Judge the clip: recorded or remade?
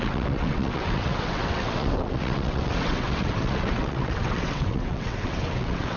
remade